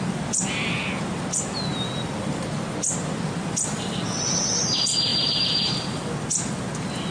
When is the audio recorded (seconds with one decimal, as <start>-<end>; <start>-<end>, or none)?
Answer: 0.0-5.1; 6.1-7.1